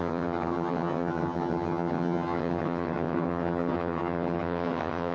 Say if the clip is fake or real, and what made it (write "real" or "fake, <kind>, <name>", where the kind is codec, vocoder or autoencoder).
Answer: fake, vocoder, HiFi-GAN